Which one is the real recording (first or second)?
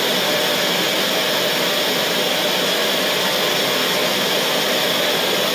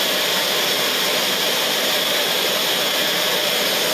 first